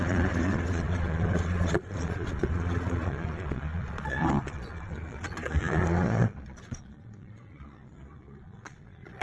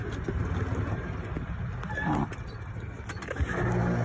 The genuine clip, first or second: second